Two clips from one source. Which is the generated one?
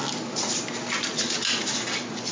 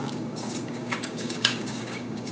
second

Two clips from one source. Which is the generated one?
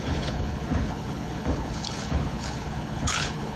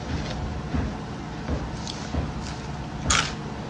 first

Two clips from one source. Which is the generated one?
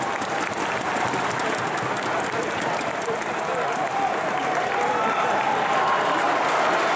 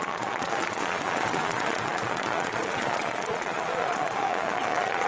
second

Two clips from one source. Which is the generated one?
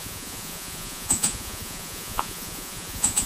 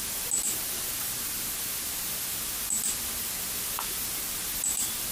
first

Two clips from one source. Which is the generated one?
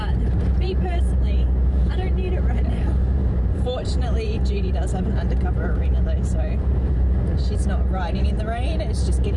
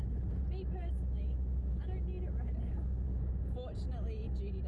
first